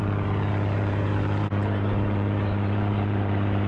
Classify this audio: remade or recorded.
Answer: remade